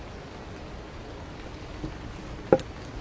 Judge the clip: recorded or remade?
recorded